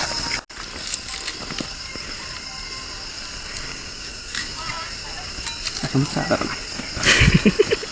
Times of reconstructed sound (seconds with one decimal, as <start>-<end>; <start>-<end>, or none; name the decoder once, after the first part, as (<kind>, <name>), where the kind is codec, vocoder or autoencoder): 3.7-4.6 (codec, DAC)

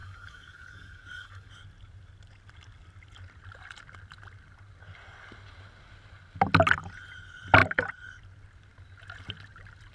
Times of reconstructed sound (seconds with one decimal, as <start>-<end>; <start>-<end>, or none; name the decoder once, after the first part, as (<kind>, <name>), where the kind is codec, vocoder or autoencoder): 0.0-1.5 (codec, DAC)

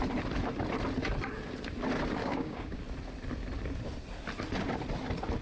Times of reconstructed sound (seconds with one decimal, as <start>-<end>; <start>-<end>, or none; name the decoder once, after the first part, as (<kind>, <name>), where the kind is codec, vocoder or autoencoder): 2.2-2.8 (codec, DAC)

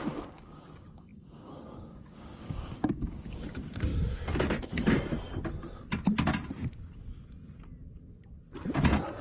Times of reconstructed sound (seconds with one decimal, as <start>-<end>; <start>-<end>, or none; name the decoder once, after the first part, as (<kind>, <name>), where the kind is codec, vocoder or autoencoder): 0.0-3.9 (codec, DAC)

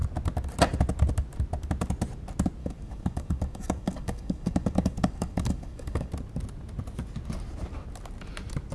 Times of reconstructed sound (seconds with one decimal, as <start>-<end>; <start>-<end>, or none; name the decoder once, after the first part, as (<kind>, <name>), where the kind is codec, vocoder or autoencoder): 2.6-6.1 (codec, DAC)

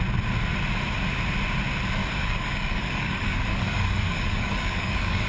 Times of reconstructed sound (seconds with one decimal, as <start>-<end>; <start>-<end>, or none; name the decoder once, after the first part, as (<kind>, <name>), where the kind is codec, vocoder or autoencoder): 2.0-5.3 (codec, DAC)

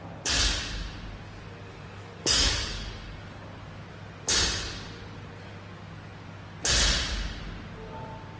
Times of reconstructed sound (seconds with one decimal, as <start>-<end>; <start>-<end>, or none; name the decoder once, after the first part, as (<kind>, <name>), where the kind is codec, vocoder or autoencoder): 1.7-3.4 (codec, DAC)

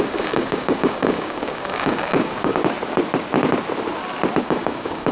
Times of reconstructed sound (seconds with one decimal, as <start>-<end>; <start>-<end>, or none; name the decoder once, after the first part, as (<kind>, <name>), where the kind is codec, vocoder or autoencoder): 0.0-2.6 (codec, DAC); 4.4-5.1